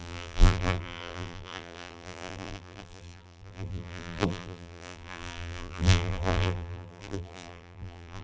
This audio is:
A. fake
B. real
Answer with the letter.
A